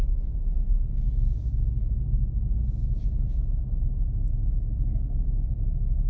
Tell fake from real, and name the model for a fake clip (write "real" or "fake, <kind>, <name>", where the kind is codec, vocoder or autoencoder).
real